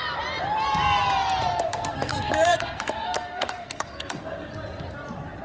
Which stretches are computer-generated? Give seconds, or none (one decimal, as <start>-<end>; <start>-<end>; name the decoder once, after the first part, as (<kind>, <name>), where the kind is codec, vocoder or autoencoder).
1.5-4.5 (codec, SNAC)